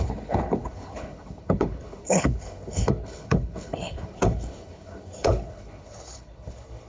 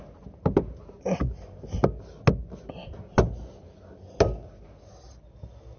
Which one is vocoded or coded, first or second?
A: first